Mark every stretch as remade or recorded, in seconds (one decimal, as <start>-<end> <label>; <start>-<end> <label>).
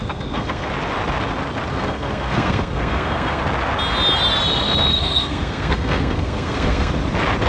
0.0-0.7 remade; 0.7-1.7 recorded; 1.7-3.4 remade; 3.4-4.9 recorded; 4.9-6.9 remade; 6.9-7.5 recorded